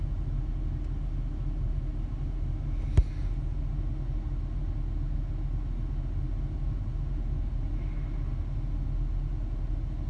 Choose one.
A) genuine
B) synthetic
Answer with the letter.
A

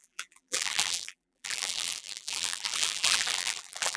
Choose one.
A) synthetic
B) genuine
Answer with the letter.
A